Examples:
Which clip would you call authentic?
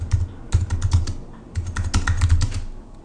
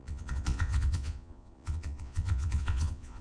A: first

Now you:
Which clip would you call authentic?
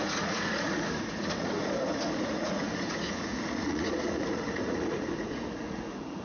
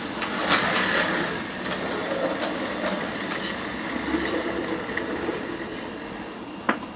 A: second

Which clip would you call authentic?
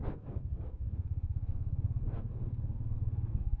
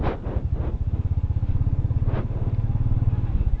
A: second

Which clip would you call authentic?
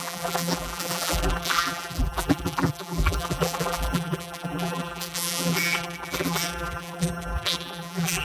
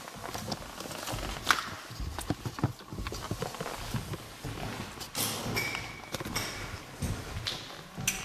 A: second